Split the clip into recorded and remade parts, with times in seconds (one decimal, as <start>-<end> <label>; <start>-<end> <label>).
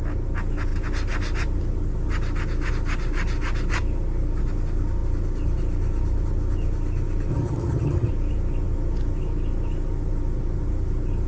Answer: 0.0-7.3 recorded; 7.3-8.1 remade; 8.1-11.3 recorded